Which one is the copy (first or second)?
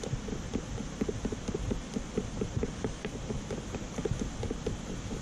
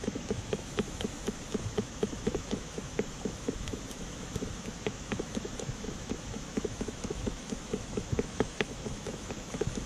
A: second